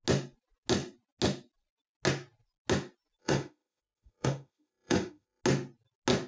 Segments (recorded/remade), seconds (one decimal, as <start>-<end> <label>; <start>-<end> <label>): 0.0-3.2 recorded; 3.2-5.4 remade; 5.4-6.3 recorded